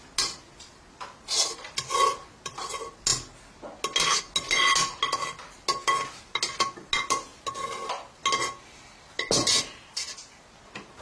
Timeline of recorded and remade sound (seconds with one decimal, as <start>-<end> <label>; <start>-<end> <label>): 0.0-11.0 recorded